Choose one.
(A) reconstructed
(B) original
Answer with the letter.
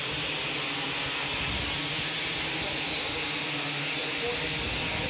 B